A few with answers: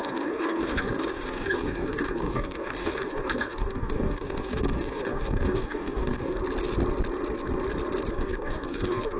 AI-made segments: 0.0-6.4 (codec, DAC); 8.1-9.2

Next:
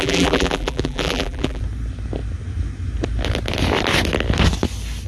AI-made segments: 0.0-1.6 (vocoder, BigVGAN v2)